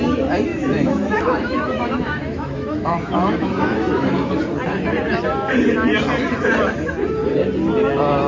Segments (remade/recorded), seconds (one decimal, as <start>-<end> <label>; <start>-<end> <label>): 0.0-0.5 recorded; 0.5-4.4 remade; 4.4-8.3 recorded